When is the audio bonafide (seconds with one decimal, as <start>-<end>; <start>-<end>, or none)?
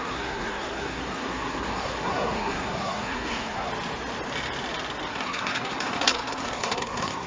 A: 3.7-5.1